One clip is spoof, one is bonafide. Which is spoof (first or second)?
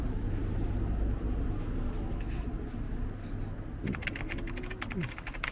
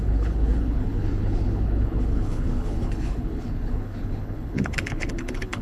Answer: second